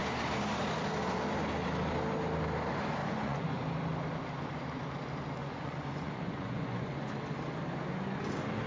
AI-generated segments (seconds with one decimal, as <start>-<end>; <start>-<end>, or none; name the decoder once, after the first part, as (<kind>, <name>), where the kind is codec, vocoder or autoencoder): 3.0-3.6 (vocoder, Vocos); 5.4-7.1